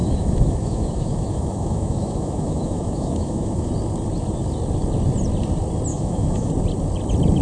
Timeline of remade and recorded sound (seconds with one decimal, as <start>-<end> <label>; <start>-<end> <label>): 0.0-3.7 remade; 3.7-5.9 recorded; 5.9-6.5 remade; 6.5-7.4 recorded